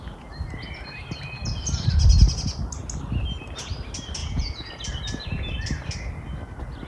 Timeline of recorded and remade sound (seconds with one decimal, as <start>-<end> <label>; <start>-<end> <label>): 0.0-4.2 recorded; 4.2-4.7 remade; 4.7-6.9 recorded